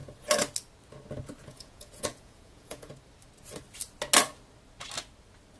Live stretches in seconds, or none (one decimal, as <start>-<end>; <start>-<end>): 0.0-1.4; 2.9-5.6